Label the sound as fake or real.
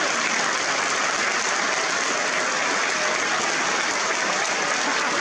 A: real